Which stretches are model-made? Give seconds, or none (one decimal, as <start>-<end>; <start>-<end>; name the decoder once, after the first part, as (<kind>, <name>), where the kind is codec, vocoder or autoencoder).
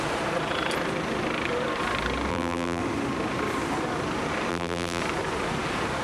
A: 2.3-2.8 (vocoder, BigVGAN v2); 4.5-5.0